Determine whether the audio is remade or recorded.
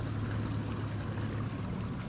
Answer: recorded